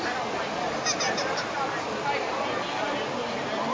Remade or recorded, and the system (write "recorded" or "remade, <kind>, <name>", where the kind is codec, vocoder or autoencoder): recorded